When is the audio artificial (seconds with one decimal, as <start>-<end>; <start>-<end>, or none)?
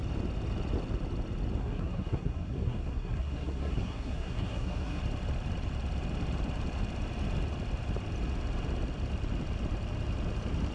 1.6-5.0